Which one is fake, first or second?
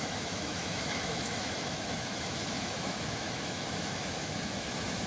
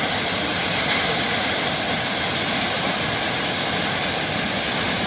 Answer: first